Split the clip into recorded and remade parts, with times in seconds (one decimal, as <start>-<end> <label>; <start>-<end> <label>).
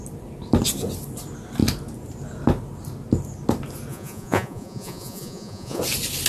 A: 0.0-3.9 recorded; 3.9-5.8 remade; 5.8-6.3 recorded